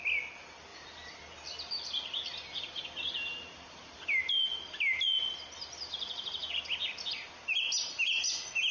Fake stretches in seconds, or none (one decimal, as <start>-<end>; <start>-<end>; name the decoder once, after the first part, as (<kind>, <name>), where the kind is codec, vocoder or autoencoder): none